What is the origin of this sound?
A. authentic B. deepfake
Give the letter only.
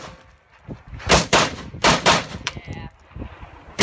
B